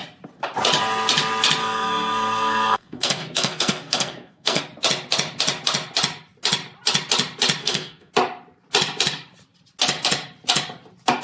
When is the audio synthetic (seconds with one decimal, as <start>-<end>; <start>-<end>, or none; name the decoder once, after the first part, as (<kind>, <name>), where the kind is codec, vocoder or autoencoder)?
1.6-4.6 (codec, SNAC); 7.6-8.1